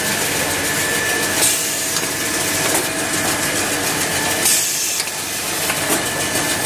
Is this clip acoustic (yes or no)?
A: yes